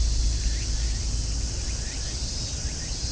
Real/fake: real